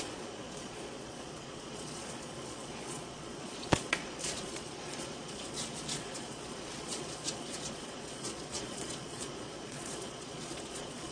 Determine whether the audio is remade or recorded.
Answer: remade